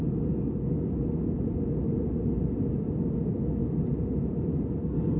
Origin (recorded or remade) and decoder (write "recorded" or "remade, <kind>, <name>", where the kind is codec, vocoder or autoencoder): recorded